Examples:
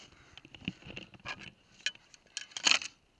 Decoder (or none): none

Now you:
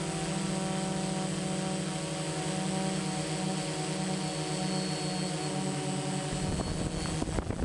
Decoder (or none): none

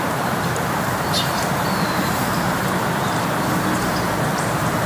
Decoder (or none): vocoder, BigVGAN v2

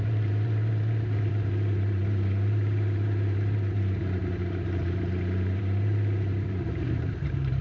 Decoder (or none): vocoder, BigVGAN v2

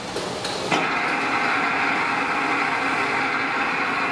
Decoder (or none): none